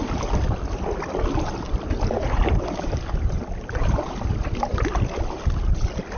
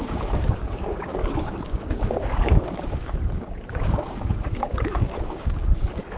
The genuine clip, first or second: first